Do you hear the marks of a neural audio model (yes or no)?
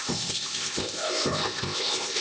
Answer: yes